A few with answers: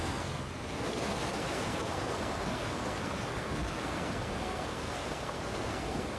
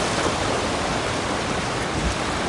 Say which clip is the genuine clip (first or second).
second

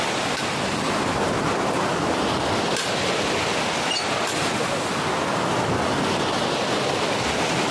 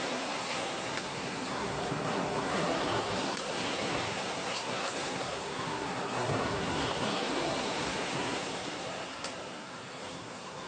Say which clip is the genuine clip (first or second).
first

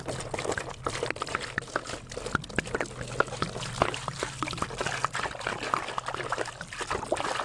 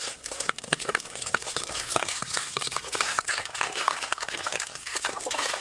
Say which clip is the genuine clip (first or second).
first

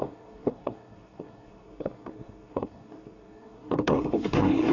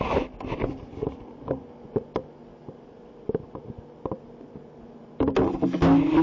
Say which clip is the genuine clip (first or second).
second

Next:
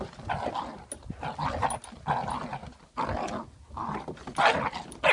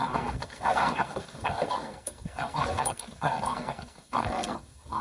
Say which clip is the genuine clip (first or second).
first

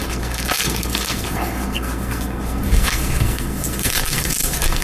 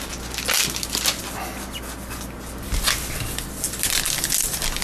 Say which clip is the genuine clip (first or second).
second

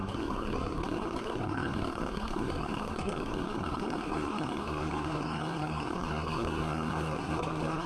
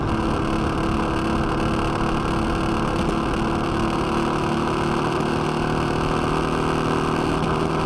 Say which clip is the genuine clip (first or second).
second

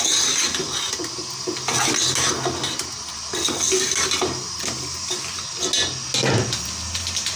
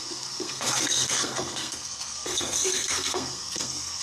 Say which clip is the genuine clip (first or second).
first